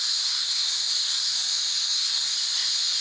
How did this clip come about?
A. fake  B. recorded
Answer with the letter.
A